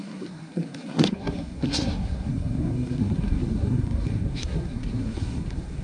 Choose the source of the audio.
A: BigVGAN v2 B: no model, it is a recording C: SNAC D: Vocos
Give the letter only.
C